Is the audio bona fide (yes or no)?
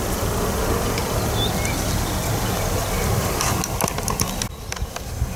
yes